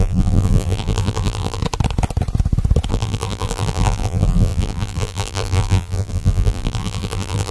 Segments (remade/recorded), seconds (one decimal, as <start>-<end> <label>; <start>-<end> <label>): 0.0-1.6 remade; 1.6-2.9 recorded; 2.9-7.5 remade